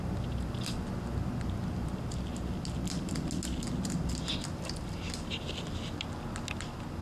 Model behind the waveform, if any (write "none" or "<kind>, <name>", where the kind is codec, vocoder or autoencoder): none